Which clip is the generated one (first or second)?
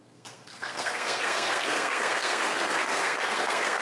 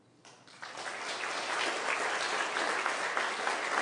first